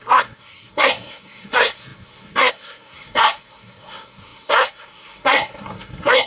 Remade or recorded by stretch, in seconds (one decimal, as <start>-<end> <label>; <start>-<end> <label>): 0.0-6.3 remade